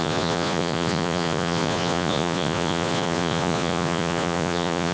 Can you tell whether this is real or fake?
fake